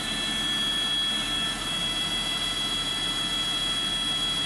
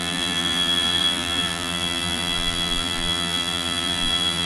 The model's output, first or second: second